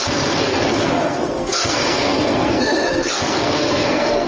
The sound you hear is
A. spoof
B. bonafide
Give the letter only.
A